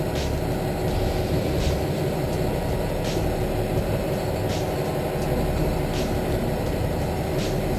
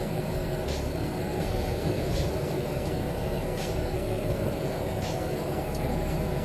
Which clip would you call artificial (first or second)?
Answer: second